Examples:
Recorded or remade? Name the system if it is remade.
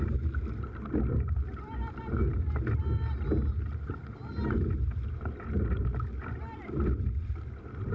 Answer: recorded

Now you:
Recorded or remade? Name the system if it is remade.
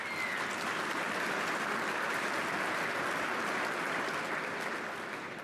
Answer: recorded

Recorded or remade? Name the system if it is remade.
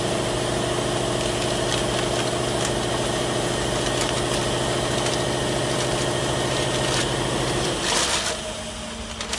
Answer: recorded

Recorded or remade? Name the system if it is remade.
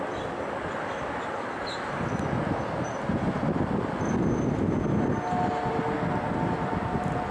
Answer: recorded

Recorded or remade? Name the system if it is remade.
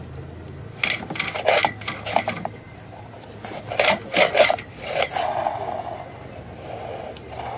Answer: recorded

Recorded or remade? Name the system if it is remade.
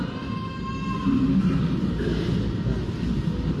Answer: recorded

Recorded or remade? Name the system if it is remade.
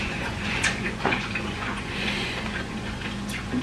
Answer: remade, vocoder, Vocos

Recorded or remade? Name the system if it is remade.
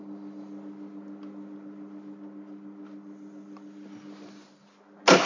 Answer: recorded